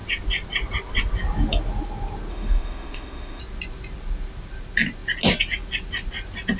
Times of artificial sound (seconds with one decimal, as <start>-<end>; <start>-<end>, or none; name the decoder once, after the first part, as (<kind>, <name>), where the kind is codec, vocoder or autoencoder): 2.3-3.4 (autoencoder, DAC-VAE)